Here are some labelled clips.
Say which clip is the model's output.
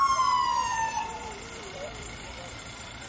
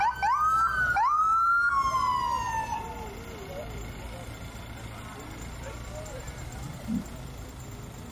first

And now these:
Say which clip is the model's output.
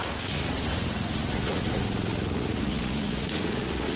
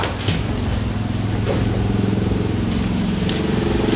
first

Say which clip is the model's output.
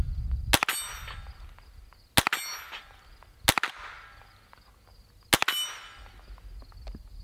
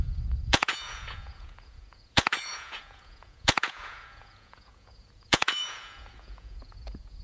second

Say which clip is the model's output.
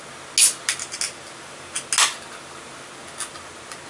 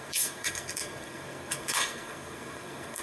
second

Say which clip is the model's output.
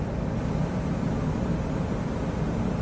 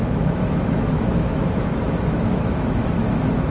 second